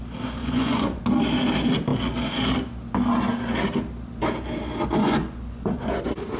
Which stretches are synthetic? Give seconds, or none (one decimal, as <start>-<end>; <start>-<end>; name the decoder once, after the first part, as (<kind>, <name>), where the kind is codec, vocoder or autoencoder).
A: 0.4-1.0 (vocoder, Vocos); 5.0-6.0